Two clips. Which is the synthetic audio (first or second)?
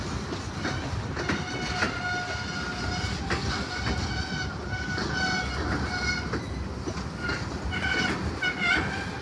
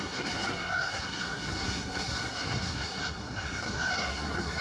second